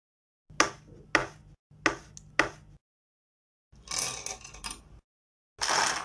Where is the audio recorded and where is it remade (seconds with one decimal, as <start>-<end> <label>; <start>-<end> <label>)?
0.0-6.0 recorded